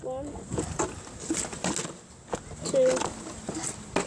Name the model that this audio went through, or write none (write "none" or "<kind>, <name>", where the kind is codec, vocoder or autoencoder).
none